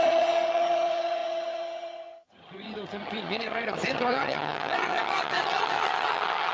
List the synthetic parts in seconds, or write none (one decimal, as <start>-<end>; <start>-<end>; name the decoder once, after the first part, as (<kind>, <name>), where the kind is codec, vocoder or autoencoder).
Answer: 0.0-6.5 (vocoder, HiFi-GAN)